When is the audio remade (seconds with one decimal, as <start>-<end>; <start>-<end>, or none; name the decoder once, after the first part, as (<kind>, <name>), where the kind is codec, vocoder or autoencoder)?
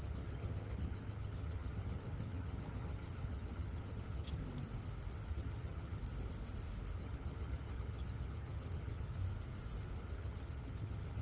0.0-4.4 (vocoder, HiFi-GAN); 5.3-6.0; 7.0-9.2; 10.0-11.2